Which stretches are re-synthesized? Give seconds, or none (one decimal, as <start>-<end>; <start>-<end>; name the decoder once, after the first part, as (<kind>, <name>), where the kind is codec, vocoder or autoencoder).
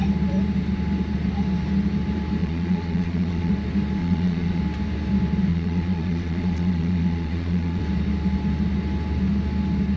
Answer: 2.4-3.5 (vocoder, Vocos); 4.0-4.6; 5.5-7.8